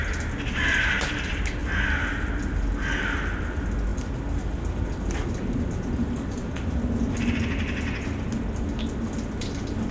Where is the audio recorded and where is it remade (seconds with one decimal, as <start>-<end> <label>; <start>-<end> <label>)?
0.0-9.9 recorded